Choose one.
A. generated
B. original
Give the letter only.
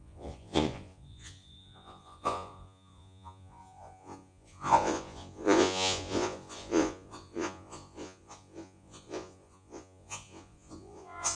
A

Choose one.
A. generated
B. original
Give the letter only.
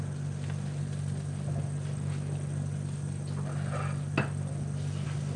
B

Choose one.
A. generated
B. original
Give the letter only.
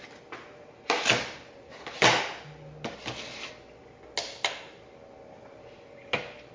B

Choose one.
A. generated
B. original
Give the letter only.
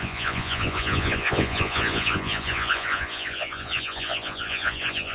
A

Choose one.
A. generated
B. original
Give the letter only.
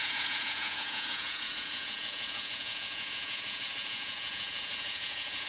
A